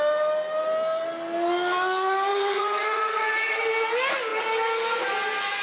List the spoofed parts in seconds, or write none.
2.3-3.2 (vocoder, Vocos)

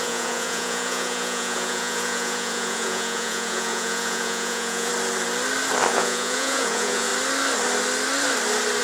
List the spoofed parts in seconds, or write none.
0.0-4.9 (vocoder, Vocos); 5.9-7.1